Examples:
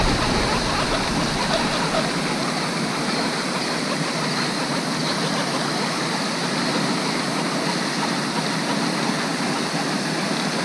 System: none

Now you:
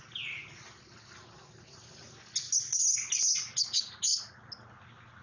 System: none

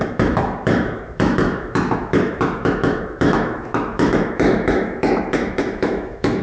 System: autoencoder, DAC-VAE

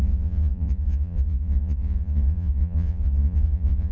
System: vocoder, Vocos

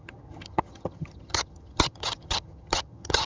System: vocoder, HiFi-GAN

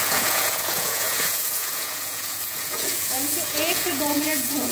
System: vocoder, Vocos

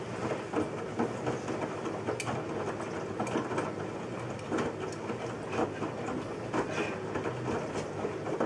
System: none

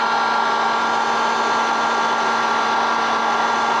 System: none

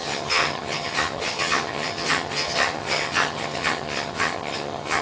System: vocoder, HiFi-GAN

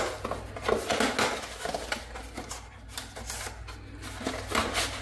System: none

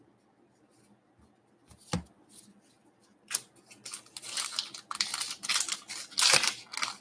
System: none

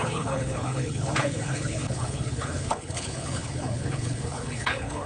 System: codec, HILCodec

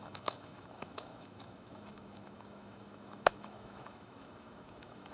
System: autoencoder, DAC-VAE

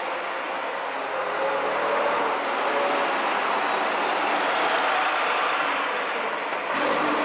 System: none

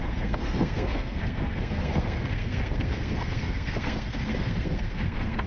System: codec, SNAC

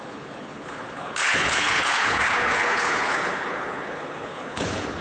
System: codec, HILCodec